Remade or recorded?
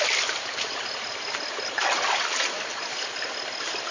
recorded